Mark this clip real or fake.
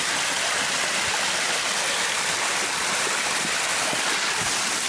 real